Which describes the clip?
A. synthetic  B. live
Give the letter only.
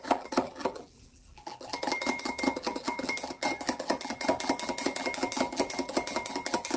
A